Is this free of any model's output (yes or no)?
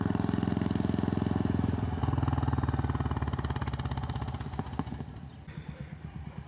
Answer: yes